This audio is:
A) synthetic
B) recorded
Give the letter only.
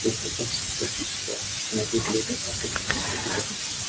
B